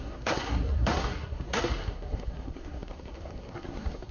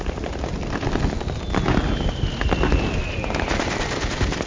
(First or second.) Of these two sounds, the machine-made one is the first